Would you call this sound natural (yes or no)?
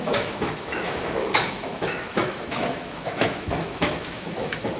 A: no